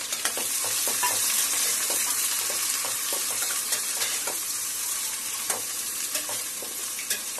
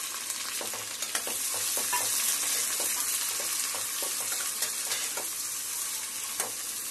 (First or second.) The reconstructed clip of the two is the first